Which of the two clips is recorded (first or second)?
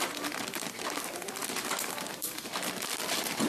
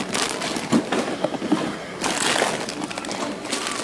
second